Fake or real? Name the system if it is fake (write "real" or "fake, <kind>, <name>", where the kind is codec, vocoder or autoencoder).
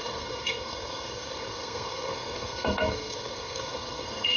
fake, codec, SNAC